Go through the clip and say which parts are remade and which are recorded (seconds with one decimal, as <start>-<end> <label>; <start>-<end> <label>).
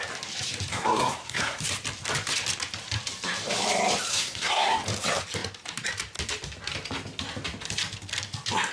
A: 0.0-0.7 recorded; 0.7-1.6 remade; 1.6-4.1 recorded; 4.1-4.8 remade; 4.8-8.7 recorded